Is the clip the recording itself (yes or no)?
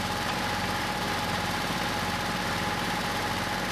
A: yes